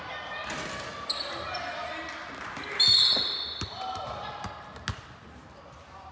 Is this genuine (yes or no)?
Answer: yes